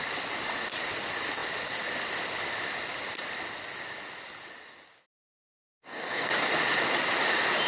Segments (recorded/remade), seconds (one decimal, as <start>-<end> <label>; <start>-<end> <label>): 0.0-5.3 recorded; 5.3-6.3 remade; 6.3-7.7 recorded

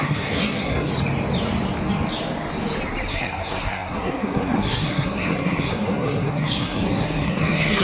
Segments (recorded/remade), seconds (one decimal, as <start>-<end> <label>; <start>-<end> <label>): 0.0-0.9 remade; 0.9-3.1 recorded; 3.1-7.8 remade

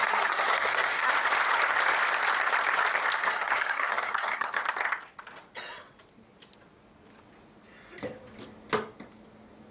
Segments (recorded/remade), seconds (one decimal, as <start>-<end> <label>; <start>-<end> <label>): 0.0-1.1 remade; 1.1-3.2 recorded; 3.2-4.6 remade; 4.6-9.7 recorded

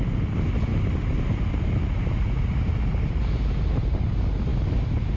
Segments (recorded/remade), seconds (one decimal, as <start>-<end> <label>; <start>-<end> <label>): 0.0-5.2 recorded

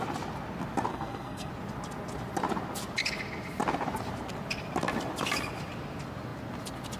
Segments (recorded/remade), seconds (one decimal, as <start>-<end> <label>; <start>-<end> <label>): 0.0-0.9 recorded; 0.9-1.5 remade; 1.5-7.0 recorded

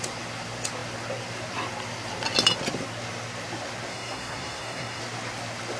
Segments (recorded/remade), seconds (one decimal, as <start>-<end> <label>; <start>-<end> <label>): 0.0-3.9 recorded; 3.9-5.0 remade; 5.0-5.8 recorded

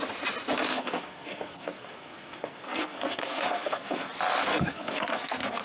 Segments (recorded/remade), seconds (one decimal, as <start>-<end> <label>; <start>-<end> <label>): 0.0-0.7 recorded; 0.7-4.1 remade; 4.1-4.5 recorded; 4.5-5.6 remade